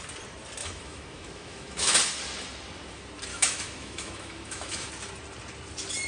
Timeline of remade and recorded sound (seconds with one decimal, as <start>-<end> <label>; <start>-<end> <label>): 0.0-0.6 recorded; 0.6-1.9 remade; 1.9-3.3 recorded; 3.3-4.9 remade; 4.9-6.1 recorded